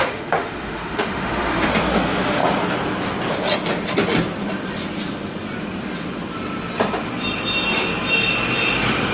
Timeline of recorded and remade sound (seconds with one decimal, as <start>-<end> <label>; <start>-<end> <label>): 0.0-1.7 remade; 1.7-9.1 recorded